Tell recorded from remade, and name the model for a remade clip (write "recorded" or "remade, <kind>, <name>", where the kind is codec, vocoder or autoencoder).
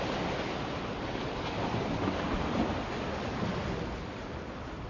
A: recorded